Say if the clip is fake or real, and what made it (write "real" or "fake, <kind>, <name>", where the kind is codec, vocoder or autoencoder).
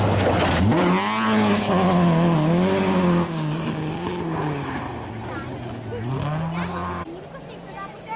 real